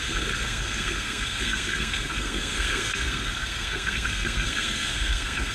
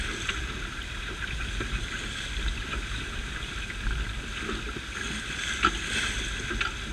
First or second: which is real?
second